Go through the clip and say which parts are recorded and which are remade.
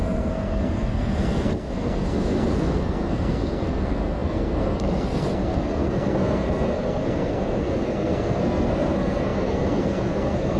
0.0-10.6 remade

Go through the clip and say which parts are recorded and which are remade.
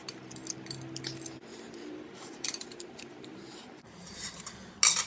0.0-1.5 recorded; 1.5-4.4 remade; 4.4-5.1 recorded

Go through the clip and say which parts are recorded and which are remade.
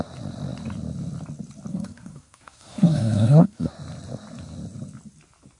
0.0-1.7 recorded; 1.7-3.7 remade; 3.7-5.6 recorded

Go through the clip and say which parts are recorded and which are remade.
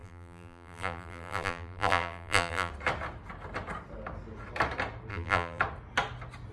0.0-2.7 remade; 2.7-5.1 recorded; 5.1-5.6 remade; 5.6-6.5 recorded